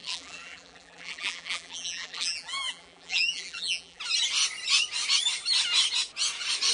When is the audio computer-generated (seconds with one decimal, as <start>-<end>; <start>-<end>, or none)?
0.0-4.0